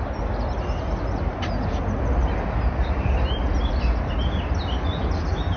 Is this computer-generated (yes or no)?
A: no